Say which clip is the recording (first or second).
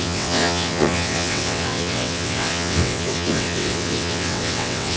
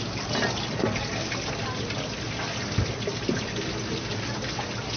second